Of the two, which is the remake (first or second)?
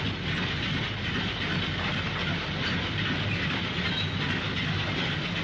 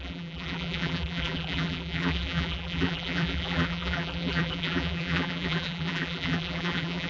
second